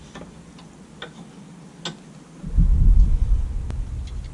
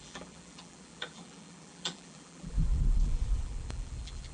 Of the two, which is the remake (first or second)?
second